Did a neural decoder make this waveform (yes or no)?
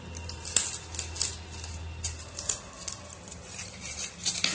no